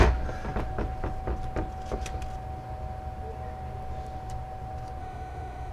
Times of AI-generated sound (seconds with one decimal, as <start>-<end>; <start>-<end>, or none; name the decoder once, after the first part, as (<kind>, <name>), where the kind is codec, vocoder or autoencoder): 5.0-5.7 (autoencoder, DAC-VAE)